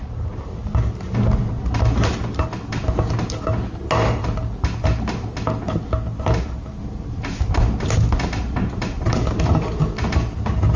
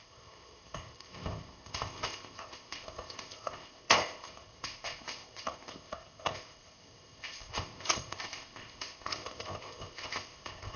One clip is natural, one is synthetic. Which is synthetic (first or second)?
second